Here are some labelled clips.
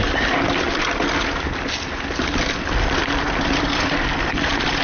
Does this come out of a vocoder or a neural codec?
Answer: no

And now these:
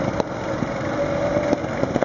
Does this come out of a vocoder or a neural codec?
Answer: no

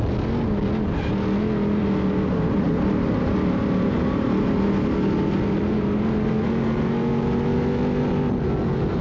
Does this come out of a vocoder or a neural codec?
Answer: no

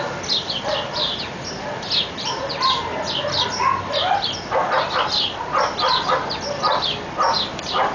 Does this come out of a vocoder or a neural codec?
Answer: no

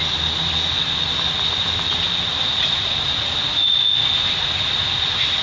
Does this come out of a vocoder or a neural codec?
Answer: no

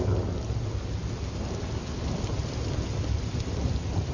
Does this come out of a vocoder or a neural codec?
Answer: no